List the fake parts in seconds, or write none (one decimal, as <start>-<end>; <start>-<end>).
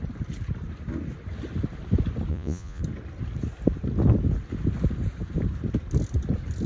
2.3-2.8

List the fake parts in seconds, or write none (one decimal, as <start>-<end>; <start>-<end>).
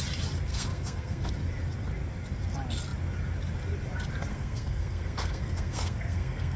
0.5-1.3; 4.3-6.6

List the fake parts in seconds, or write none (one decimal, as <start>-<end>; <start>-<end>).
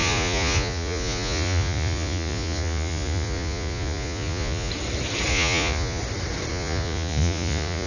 0.0-4.7; 5.3-6.0; 6.5-7.9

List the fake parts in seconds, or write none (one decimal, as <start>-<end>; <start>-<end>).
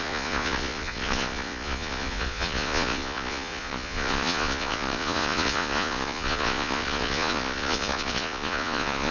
0.0-9.1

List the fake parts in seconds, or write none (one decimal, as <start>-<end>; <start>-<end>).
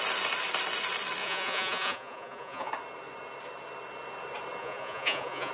1.2-2.7; 4.6-5.5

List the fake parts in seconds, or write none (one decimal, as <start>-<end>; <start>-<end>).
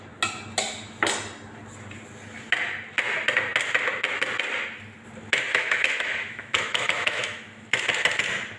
5.5-7.8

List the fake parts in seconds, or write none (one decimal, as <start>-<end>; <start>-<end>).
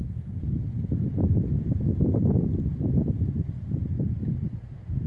none